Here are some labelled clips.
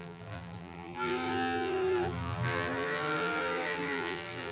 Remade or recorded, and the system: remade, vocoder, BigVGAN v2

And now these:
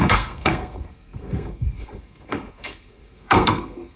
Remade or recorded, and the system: remade, codec, SNAC